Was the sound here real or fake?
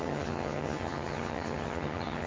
fake